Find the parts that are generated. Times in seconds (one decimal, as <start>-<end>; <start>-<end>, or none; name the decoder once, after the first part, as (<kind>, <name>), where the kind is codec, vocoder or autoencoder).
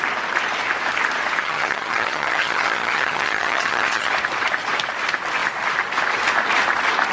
1.4-4.1 (vocoder, HiFi-GAN)